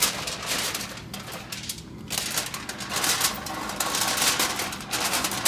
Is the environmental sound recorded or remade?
recorded